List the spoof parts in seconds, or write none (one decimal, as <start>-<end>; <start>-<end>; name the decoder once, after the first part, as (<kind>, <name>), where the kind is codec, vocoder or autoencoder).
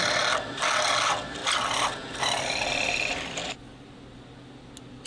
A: none